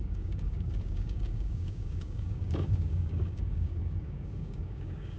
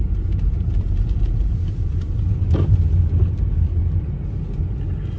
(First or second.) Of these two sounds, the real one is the second